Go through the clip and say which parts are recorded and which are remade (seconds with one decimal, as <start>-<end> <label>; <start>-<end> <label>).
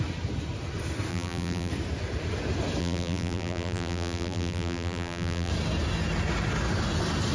0.0-1.1 recorded; 1.1-1.7 remade; 1.7-2.8 recorded; 2.8-5.5 remade; 5.5-7.3 recorded